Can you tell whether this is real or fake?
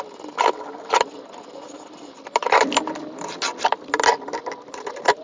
real